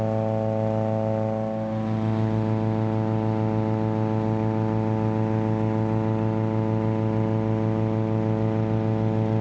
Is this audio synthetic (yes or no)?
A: no